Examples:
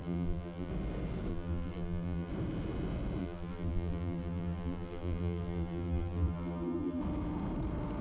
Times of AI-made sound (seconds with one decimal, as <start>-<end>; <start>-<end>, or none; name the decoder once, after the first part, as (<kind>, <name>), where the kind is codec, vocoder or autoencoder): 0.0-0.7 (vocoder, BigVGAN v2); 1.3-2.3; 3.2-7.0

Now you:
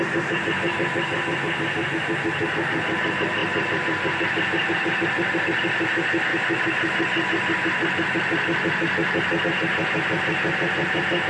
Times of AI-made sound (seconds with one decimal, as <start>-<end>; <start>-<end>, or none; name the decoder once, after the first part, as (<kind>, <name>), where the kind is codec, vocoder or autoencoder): none

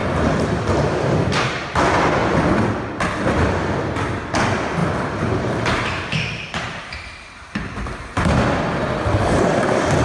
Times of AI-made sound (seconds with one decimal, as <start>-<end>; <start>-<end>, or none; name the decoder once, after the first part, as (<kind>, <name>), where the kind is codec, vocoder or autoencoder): 0.0-1.8 (vocoder, BigVGAN v2); 4.8-8.4

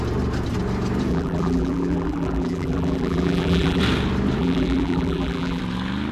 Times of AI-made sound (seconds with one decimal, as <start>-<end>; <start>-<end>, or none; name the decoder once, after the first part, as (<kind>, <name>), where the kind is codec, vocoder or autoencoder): 1.1-3.8 (vocoder, BigVGAN v2); 4.4-5.6

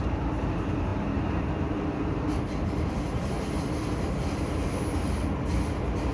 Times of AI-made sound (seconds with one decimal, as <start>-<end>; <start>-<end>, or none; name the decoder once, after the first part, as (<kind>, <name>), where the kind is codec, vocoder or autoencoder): none

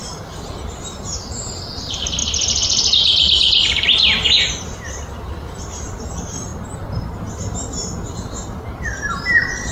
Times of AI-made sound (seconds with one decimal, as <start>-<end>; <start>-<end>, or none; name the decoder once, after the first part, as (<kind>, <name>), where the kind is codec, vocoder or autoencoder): 0.0-6.5 (vocoder, BigVGAN v2); 8.8-9.7

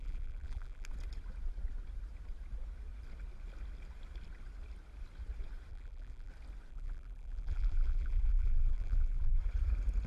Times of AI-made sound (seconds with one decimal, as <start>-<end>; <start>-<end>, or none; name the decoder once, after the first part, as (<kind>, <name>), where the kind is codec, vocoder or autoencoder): 0.0-0.9 (vocoder, BigVGAN v2); 5.7-6.3; 6.7-9.4